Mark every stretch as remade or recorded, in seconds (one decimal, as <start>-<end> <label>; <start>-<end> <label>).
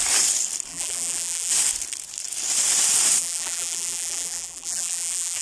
0.0-0.7 recorded; 0.7-1.5 remade; 1.5-3.2 recorded; 3.2-5.4 remade